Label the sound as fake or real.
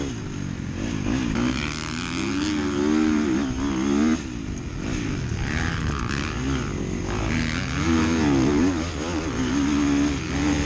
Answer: real